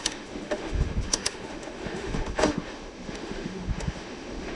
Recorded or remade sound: remade